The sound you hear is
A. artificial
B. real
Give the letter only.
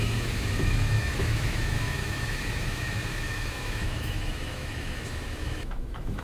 A